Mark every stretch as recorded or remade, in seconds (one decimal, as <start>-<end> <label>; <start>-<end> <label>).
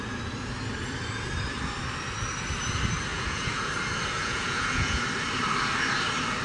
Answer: 0.0-3.1 recorded; 3.1-3.7 remade; 3.7-4.2 recorded; 4.2-5.0 remade; 5.0-6.4 recorded